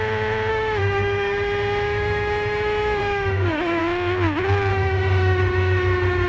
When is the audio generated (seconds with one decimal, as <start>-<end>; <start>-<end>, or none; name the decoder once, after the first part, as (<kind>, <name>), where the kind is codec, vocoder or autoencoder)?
0.5-3.8 (autoencoder, DAC-VAE); 4.7-6.3